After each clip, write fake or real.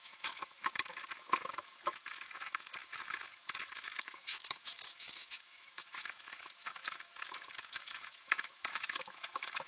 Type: fake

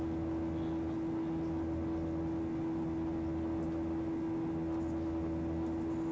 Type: real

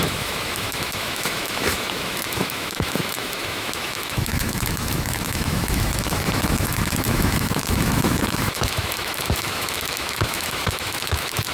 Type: fake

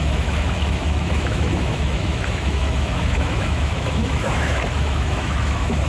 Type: fake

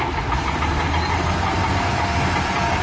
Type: real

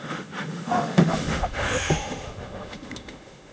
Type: fake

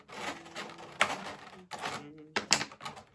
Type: real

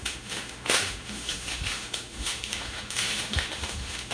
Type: fake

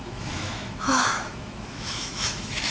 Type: fake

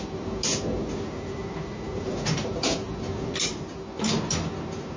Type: real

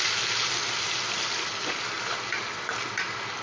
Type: real